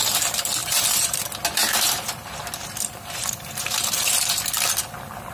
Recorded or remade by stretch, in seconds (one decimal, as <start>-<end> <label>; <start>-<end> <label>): 0.0-0.6 recorded; 0.6-1.2 remade; 1.2-1.6 recorded; 1.6-4.1 remade; 4.1-5.3 recorded